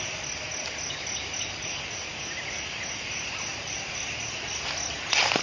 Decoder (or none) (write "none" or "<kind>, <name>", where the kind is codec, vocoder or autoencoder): none